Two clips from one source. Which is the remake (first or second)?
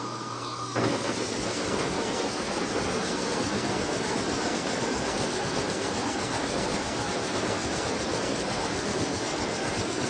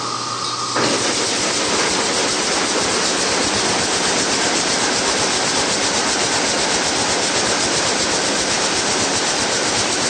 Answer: first